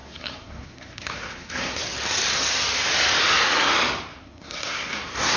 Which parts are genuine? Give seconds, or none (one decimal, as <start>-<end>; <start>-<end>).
1.8-4.1